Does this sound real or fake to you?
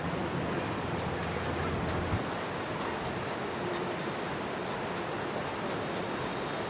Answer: real